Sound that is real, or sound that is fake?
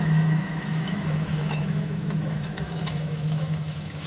fake